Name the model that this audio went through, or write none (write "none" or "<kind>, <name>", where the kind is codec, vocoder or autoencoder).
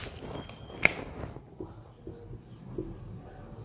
none